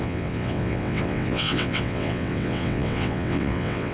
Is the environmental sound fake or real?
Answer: fake